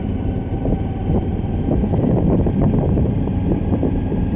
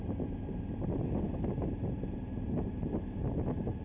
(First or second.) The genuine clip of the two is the second